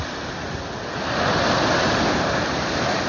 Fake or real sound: real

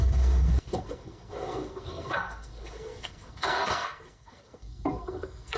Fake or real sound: fake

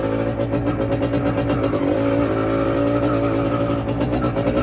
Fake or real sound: real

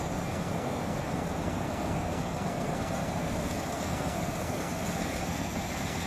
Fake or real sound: fake